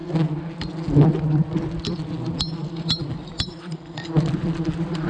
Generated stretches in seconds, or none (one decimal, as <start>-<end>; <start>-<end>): 3.1-5.1